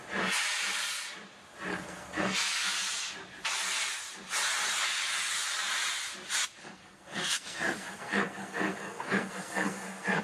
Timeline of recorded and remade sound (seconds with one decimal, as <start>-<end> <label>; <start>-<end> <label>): 0.0-1.7 recorded; 1.7-2.7 remade; 2.7-6.6 recorded; 6.6-10.2 remade